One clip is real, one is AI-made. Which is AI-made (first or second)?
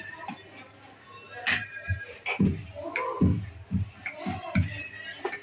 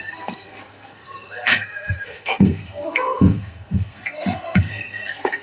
second